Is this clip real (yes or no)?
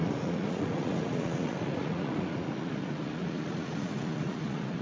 no